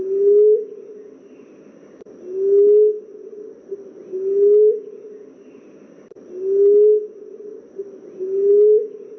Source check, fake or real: real